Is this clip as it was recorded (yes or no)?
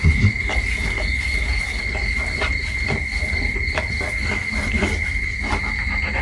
yes